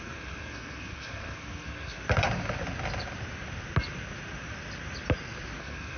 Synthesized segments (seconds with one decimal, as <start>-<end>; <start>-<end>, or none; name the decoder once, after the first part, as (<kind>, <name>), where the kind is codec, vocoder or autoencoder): 0.0-2.0 (codec, SNAC); 5.6-6.0